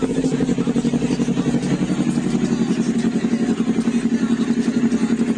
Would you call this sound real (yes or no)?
yes